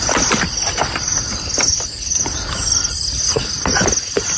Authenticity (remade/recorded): recorded